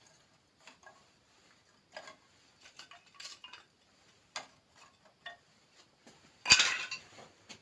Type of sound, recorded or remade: recorded